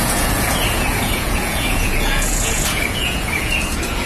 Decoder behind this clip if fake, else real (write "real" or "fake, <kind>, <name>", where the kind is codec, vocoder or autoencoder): fake, vocoder, Vocos